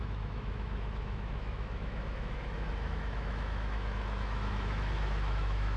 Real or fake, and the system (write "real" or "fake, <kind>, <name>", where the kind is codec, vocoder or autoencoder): fake, autoencoder, DAC-VAE